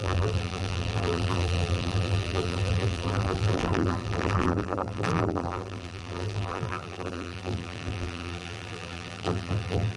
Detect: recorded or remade remade